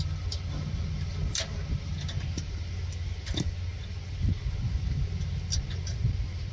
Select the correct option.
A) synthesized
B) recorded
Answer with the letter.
B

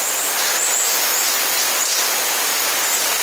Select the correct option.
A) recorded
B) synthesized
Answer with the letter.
A